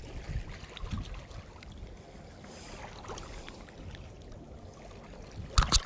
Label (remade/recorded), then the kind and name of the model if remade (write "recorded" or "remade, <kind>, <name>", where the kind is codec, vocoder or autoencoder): recorded